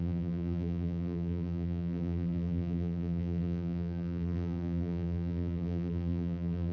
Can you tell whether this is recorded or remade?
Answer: remade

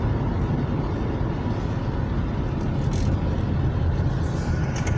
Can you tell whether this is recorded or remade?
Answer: recorded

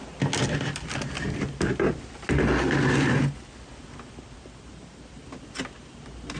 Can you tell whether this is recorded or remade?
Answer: recorded